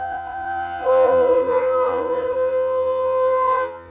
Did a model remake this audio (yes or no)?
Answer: yes